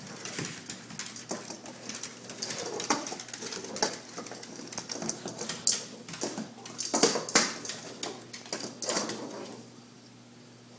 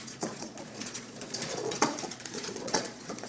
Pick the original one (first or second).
first